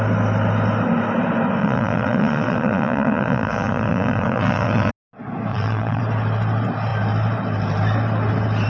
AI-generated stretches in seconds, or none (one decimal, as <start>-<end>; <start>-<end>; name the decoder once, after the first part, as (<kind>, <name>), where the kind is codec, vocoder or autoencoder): 1.6-4.9 (vocoder, WaveNeXt); 5.5-6.0